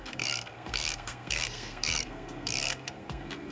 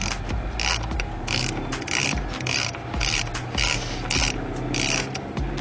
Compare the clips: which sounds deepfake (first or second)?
first